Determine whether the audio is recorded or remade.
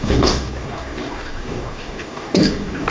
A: remade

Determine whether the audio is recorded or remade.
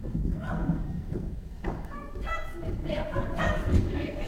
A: remade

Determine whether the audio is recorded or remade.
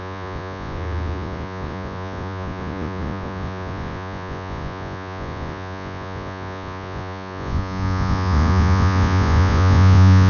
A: remade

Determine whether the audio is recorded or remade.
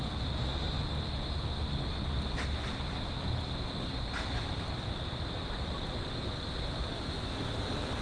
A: recorded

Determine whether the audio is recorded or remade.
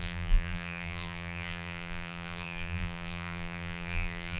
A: remade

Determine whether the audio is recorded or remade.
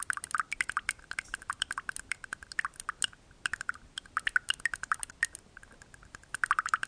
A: recorded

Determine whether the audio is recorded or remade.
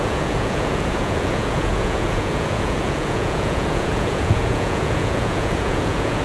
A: remade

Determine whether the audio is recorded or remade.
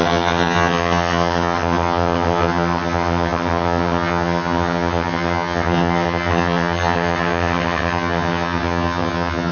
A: remade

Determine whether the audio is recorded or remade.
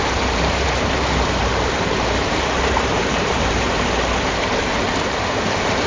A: remade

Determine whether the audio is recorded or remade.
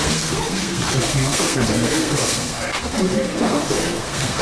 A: remade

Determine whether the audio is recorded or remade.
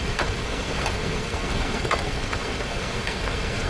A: remade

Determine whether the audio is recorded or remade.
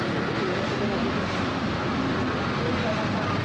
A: recorded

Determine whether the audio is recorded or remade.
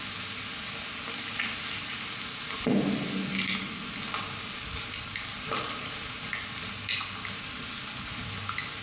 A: recorded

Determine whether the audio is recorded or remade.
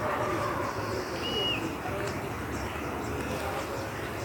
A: recorded